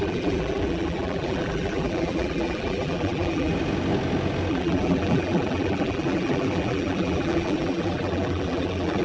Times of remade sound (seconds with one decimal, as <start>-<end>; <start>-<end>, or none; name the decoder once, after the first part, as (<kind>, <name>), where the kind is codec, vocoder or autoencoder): 0.0-3.5 (vocoder, BigVGAN v2); 4.5-9.0